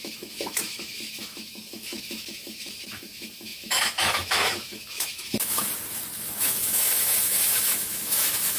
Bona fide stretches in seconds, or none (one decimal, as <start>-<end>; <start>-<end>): 5.7-6.4